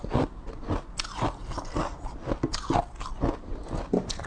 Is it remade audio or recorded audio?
recorded